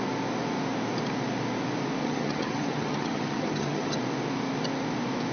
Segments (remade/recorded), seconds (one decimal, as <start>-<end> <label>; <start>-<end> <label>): 0.0-2.0 recorded; 2.0-4.0 remade; 4.0-5.3 recorded